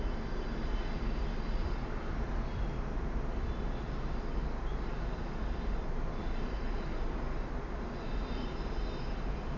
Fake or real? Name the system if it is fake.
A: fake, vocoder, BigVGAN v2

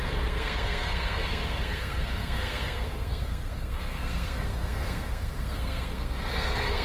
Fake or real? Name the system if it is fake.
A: fake, codec, SNAC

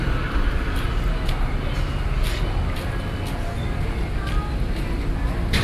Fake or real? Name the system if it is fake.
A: real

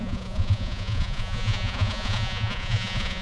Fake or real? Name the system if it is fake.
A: fake, vocoder, Vocos